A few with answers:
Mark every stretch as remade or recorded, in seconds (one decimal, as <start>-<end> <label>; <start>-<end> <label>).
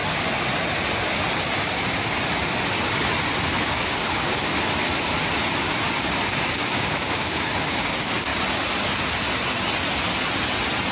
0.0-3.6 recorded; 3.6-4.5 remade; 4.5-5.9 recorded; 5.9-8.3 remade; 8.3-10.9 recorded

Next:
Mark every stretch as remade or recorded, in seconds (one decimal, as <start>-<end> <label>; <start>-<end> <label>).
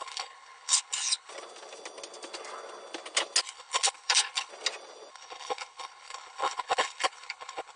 0.0-1.3 remade; 1.3-3.4 recorded; 3.4-4.5 remade; 4.5-5.1 recorded; 5.1-7.8 remade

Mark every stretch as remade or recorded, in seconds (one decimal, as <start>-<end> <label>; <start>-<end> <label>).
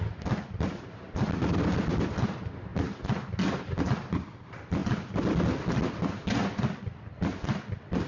0.0-8.1 recorded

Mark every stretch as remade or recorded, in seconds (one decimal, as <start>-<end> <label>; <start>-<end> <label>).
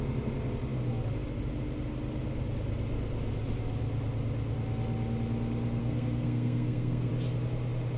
0.0-5.8 recorded; 5.8-7.1 remade; 7.1-8.0 recorded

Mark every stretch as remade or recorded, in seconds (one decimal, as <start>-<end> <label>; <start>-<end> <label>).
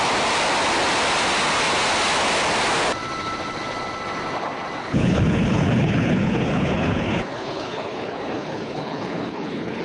0.0-4.8 recorded; 4.8-9.8 remade